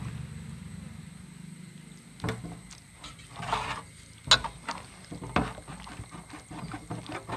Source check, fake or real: real